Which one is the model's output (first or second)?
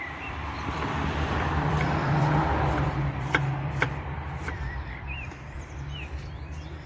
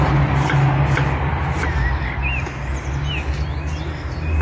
first